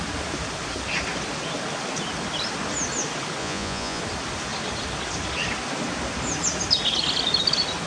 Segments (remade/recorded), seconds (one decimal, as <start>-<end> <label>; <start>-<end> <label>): 0.0-3.4 recorded; 3.4-4.0 remade; 4.0-7.9 recorded